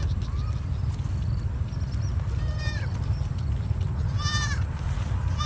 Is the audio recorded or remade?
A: recorded